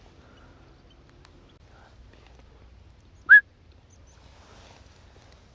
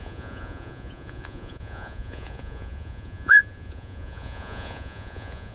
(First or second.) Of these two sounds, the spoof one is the second